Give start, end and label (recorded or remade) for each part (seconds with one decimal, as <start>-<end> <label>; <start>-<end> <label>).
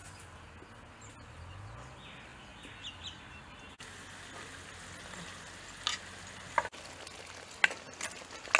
0.0-8.6 recorded